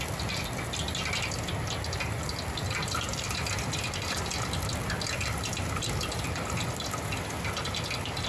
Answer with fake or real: real